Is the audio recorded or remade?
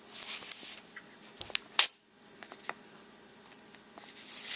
recorded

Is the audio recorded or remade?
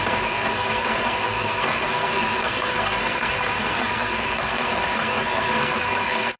remade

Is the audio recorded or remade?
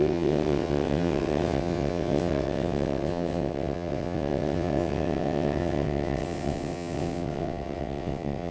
remade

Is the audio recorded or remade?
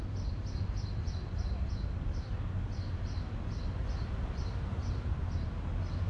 recorded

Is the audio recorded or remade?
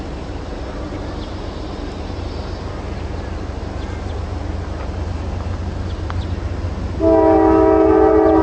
recorded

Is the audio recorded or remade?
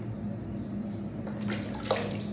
recorded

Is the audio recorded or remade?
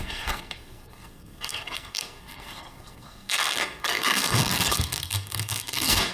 remade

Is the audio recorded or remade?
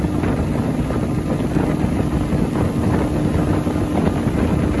recorded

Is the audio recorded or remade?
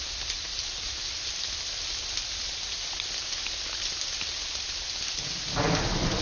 recorded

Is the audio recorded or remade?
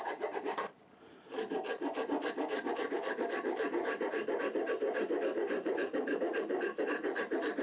remade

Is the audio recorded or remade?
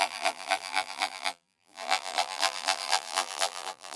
remade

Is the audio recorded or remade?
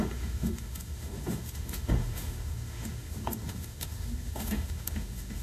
remade